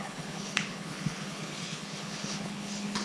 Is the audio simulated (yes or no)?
yes